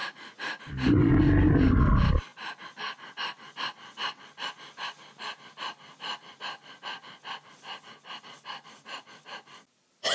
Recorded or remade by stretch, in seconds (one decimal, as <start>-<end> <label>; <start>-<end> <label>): 0.0-0.6 remade; 0.6-10.1 recorded